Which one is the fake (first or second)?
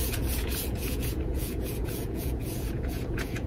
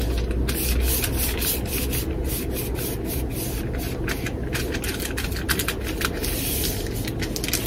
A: first